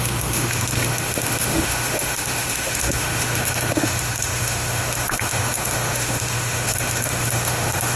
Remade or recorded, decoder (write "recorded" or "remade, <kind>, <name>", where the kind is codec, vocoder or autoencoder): remade, autoencoder, DAC-VAE